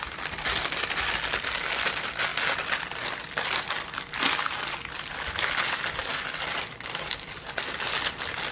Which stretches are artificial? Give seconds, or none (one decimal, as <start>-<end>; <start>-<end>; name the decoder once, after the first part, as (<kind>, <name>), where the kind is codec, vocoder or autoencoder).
none